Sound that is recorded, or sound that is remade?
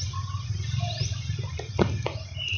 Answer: recorded